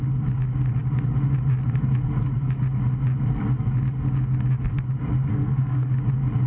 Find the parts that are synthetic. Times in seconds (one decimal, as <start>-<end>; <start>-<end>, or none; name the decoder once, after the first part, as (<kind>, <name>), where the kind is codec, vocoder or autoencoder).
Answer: 5.3-5.9 (codec, SNAC)

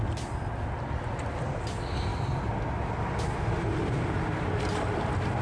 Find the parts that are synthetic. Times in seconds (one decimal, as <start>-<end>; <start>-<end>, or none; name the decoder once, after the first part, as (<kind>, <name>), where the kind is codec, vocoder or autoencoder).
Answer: none